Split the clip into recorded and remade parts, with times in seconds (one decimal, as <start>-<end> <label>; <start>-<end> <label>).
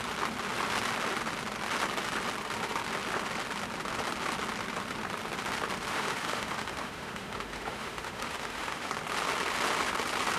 0.0-5.9 recorded; 5.9-8.9 remade; 8.9-10.4 recorded